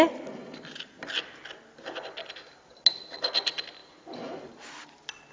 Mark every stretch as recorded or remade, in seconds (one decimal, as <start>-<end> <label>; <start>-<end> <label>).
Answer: 0.0-5.3 recorded